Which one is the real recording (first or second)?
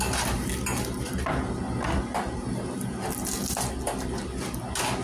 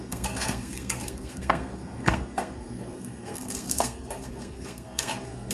first